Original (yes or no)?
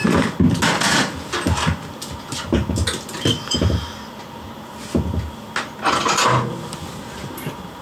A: yes